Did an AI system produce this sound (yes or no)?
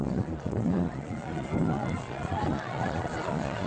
yes